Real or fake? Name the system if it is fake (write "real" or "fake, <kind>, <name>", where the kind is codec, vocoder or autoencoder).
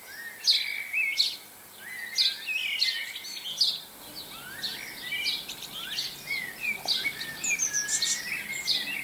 real